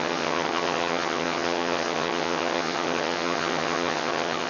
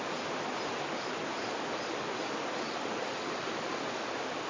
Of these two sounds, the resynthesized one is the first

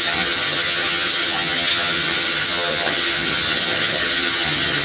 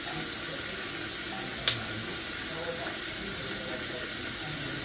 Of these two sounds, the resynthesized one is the first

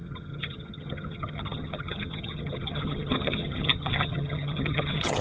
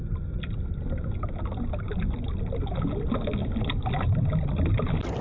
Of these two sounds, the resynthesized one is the first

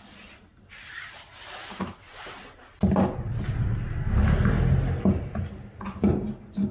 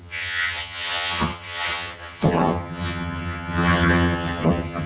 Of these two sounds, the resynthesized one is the second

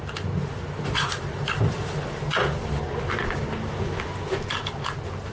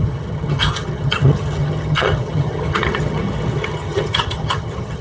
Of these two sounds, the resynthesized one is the second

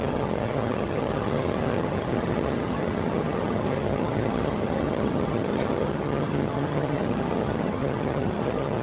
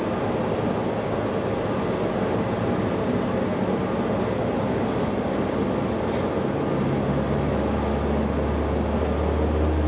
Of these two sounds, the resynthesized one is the first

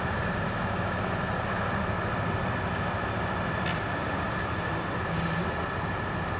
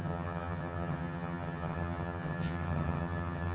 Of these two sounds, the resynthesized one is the second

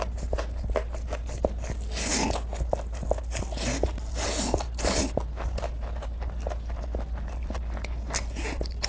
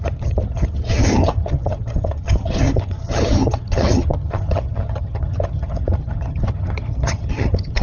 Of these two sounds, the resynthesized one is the second